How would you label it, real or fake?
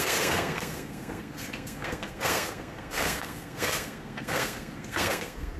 fake